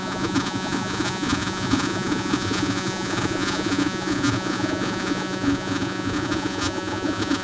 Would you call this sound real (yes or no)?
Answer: no